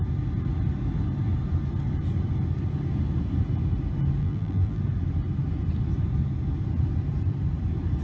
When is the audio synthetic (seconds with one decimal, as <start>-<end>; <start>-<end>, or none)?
4.2-4.8